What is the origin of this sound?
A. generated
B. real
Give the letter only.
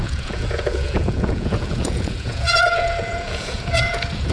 A